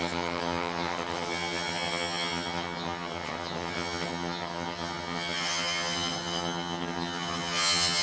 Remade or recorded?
remade